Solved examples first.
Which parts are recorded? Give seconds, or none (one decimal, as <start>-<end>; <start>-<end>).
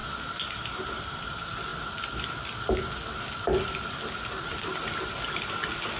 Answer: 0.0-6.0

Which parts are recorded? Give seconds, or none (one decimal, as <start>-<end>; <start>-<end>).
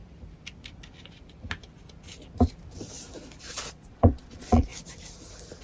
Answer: 0.0-3.4; 4.7-5.6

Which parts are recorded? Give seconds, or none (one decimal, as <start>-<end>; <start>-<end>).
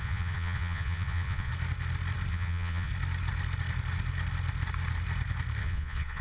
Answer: 1.5-2.3; 2.9-5.6